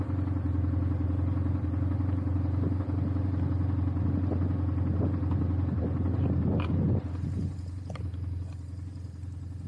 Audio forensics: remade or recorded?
recorded